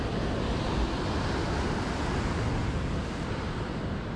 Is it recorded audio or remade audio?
recorded